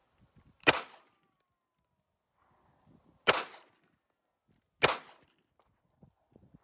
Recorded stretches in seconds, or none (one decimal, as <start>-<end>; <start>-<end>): 0.0-6.6